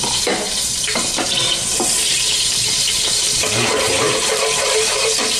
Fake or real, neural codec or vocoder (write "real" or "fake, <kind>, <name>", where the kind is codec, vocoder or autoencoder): fake, vocoder, BigVGAN v2